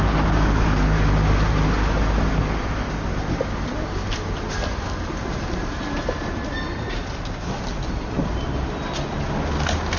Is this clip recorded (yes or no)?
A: yes